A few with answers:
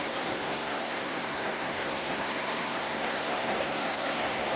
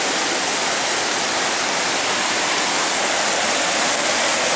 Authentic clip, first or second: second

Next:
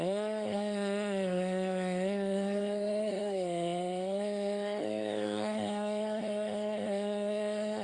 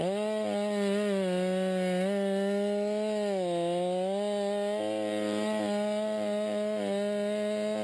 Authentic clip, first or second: second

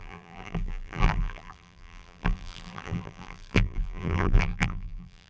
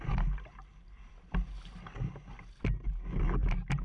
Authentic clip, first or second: second